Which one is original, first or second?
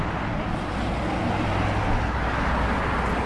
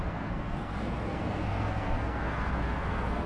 first